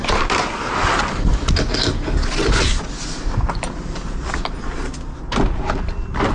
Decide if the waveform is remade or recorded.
recorded